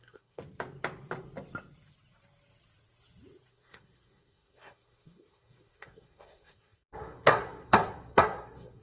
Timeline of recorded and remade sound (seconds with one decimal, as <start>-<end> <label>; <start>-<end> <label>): 0.0-0.4 remade; 0.4-3.5 recorded; 3.5-8.8 remade